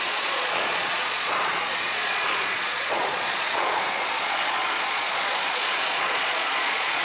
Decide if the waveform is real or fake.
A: fake